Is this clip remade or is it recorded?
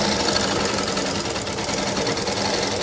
recorded